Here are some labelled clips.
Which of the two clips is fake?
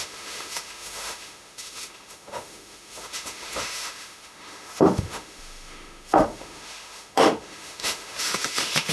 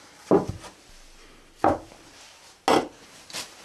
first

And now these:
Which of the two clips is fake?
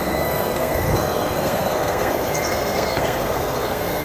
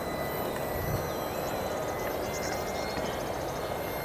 first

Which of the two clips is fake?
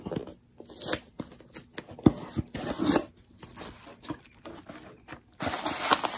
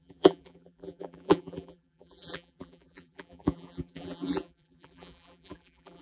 second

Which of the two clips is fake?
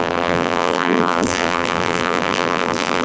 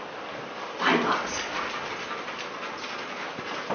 first